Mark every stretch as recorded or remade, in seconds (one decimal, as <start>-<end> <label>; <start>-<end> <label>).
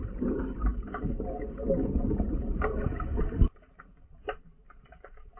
0.0-0.7 remade; 0.7-3.2 recorded; 3.2-5.4 remade